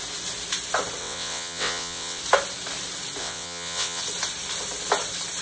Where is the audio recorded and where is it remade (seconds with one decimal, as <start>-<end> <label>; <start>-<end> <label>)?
0.0-1.0 recorded; 1.0-2.2 remade; 2.2-3.2 recorded; 3.2-4.0 remade; 4.0-5.4 recorded

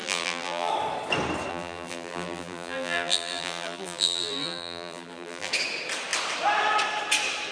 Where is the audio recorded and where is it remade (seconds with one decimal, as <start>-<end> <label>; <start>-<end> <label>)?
0.0-0.7 remade; 0.7-1.5 recorded; 1.5-5.5 remade; 5.5-7.5 recorded

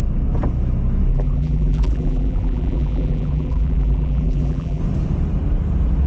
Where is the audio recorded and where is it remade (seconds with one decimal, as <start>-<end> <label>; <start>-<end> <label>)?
0.0-1.1 recorded; 1.1-4.8 remade; 4.8-6.1 recorded